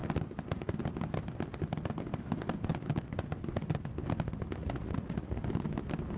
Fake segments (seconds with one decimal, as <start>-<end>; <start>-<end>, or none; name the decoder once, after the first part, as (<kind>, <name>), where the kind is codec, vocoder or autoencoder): 4.6-5.4 (vocoder, Vocos)

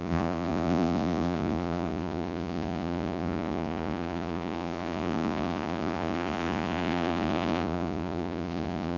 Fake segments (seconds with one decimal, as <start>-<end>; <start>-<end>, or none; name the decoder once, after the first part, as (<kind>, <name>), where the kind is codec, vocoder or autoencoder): 0.0-9.0 (vocoder, Vocos)